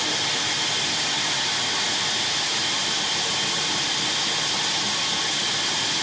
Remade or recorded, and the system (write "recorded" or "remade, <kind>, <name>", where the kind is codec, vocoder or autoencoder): recorded